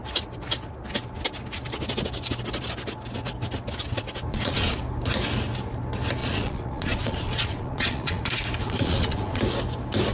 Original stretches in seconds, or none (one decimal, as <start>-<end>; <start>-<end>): 0.0-4.3; 4.8-6.2; 8.2-8.6; 9.4-10.1

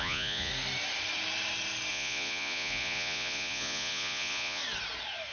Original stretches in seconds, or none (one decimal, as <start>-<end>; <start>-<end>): 0.5-1.9; 4.6-5.3

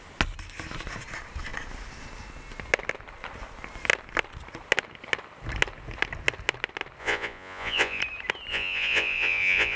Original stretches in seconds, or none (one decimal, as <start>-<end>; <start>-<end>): 0.0-7.0; 8.0-8.5

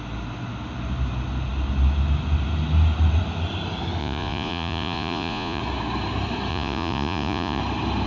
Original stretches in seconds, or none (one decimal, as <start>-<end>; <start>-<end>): 0.0-4.0; 5.6-6.5; 7.6-8.1

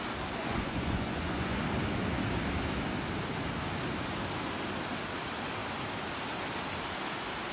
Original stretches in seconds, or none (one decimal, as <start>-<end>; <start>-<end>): 0.0-0.4; 1.6-7.5

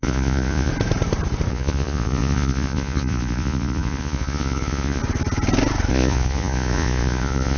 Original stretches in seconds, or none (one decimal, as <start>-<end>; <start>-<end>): 0.7-1.5; 5.0-5.9

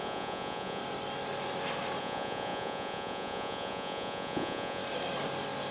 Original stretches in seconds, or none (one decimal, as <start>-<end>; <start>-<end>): 0.8-2.0; 4.8-5.7

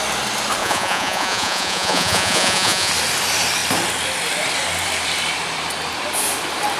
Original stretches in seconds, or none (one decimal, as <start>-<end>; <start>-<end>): 0.0-0.6; 2.9-6.8